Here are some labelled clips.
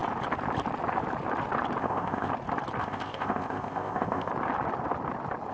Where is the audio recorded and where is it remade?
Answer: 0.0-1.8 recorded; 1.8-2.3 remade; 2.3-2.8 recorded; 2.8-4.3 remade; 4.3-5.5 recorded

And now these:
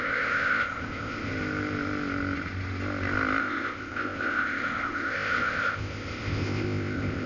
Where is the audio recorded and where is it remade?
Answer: 0.0-1.3 remade; 1.3-3.4 recorded; 3.4-7.3 remade